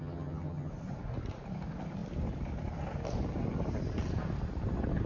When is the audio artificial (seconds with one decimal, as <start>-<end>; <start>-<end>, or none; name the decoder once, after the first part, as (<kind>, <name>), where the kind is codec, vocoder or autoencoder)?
0.0-0.7 (vocoder, HiFi-GAN)